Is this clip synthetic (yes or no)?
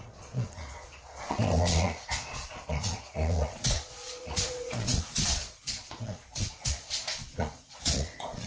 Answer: yes